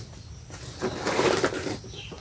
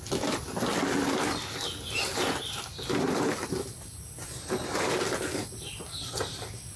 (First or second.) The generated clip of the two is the first